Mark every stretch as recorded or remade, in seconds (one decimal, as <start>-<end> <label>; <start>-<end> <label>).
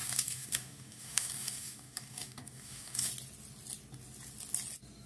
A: 0.0-3.1 remade; 3.1-5.1 recorded